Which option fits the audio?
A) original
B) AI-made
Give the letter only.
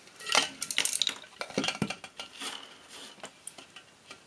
A